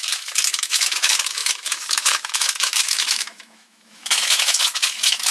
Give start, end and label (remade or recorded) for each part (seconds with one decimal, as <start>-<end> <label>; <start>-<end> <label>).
0.0-5.3 remade

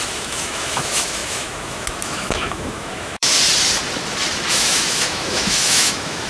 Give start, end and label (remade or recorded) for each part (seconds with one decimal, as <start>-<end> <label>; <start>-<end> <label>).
0.0-3.3 remade; 3.3-4.5 recorded; 4.5-6.3 remade

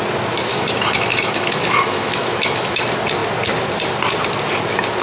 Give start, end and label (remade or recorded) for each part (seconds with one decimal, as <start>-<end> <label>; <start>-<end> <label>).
0.0-0.5 recorded; 0.5-2.8 remade; 2.8-5.0 recorded

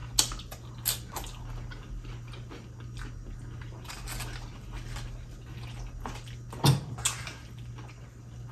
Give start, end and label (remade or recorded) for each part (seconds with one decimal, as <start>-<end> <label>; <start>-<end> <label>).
0.0-8.5 recorded